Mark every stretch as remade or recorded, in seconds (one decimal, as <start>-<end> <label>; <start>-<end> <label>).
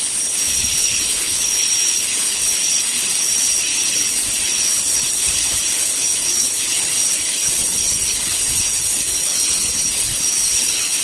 0.0-11.0 remade